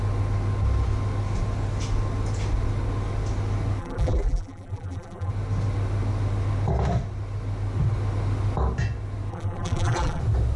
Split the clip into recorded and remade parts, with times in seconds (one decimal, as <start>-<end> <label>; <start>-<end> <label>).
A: 0.0-3.8 recorded; 3.8-5.3 remade; 5.3-9.3 recorded; 9.3-10.2 remade; 10.2-10.6 recorded